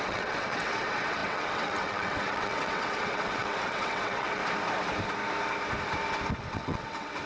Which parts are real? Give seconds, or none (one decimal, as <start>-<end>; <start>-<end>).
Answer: 4.4-6.5